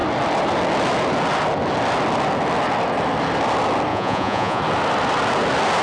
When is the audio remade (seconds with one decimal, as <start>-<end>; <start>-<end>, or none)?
3.9-4.6